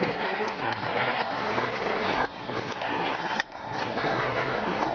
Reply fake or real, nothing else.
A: fake